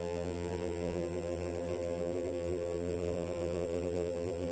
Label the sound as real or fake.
fake